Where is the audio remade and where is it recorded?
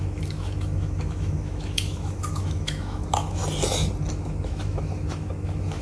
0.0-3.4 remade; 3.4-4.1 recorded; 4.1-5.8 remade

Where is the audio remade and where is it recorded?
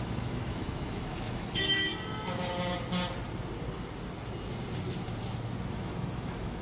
0.0-1.9 remade; 1.9-5.7 recorded; 5.7-6.6 remade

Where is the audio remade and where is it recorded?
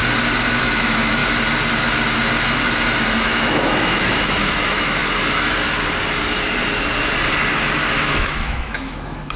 0.0-0.6 recorded; 0.6-1.2 remade; 1.2-3.2 recorded; 3.2-5.0 remade; 5.0-7.9 recorded; 7.9-9.4 remade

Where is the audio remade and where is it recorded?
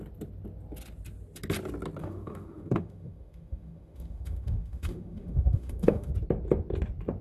0.0-2.0 recorded; 2.0-6.1 remade; 6.1-7.2 recorded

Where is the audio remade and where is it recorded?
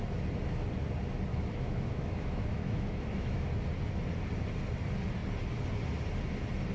0.0-1.3 recorded; 1.3-3.5 remade; 3.5-6.7 recorded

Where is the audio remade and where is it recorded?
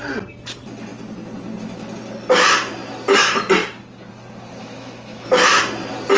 0.0-4.6 recorded; 4.6-5.6 remade; 5.6-6.2 recorded